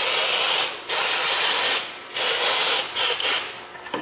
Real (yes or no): yes